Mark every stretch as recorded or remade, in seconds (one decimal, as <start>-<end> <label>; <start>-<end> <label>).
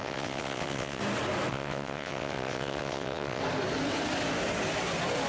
0.0-1.0 remade; 1.0-1.5 recorded; 1.5-3.4 remade; 3.4-5.3 recorded